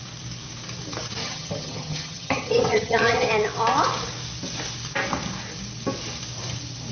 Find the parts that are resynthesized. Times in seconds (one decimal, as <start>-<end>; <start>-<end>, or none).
1.2-3.3